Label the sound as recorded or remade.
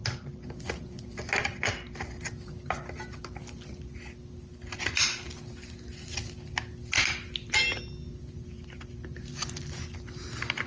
recorded